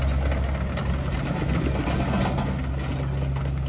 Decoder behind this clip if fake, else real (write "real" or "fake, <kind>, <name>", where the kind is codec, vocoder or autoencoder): real